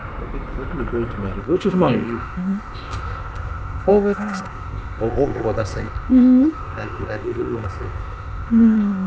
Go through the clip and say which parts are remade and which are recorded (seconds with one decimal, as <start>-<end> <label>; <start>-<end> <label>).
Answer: 0.0-1.4 recorded; 1.4-9.1 remade